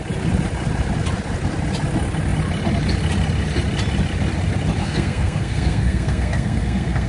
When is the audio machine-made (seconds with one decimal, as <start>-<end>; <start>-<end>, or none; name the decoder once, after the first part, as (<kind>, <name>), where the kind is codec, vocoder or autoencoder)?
4.8-7.1 (codec, SNAC)